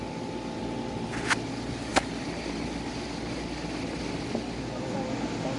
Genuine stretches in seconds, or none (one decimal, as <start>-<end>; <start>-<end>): 0.0-5.6